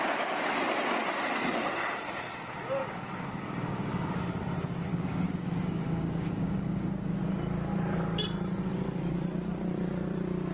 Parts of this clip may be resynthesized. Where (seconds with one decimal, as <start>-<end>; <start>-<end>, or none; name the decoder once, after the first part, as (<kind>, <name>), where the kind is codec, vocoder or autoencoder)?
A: 2.8-4.2 (codec, DAC); 4.9-7.2